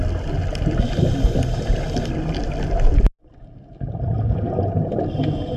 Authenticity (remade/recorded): recorded